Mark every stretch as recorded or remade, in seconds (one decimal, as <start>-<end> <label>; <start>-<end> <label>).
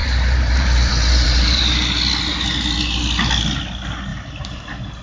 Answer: 0.0-1.6 remade; 1.6-4.1 recorded; 4.1-4.6 remade; 4.6-5.0 recorded